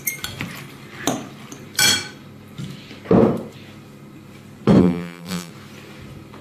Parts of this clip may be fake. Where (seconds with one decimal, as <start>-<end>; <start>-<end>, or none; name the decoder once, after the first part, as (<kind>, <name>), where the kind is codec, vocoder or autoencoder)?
4.8-5.5 (vocoder, BigVGAN v2)